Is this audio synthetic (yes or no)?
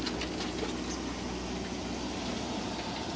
no